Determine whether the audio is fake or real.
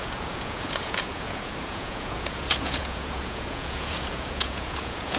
fake